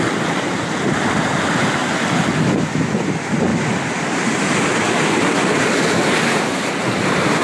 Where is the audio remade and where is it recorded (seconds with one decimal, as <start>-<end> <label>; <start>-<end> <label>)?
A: 0.0-7.4 remade